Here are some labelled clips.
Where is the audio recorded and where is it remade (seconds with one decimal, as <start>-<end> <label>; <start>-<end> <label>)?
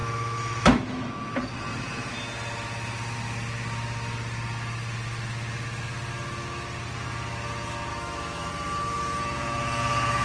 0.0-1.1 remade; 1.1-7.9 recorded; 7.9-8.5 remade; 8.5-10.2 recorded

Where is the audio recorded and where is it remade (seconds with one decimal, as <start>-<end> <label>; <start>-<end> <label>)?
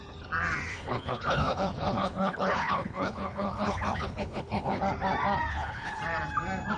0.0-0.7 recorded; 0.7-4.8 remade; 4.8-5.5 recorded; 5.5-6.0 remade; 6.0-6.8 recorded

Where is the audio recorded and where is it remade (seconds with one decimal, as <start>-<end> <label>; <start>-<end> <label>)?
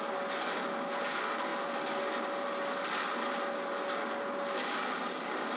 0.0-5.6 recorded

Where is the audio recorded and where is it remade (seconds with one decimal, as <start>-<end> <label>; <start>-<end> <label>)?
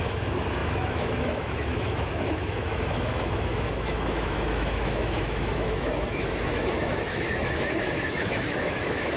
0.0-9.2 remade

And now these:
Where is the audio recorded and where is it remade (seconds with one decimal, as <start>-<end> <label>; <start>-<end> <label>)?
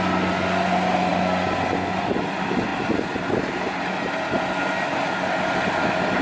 0.0-6.2 recorded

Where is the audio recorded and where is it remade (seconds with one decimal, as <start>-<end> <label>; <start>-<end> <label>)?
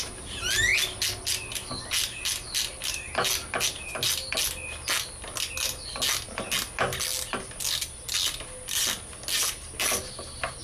0.0-10.6 recorded